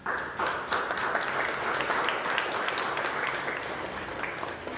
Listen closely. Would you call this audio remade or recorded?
recorded